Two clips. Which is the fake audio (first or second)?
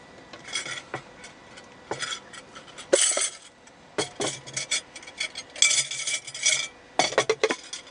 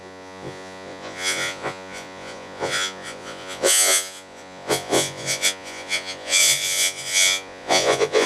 second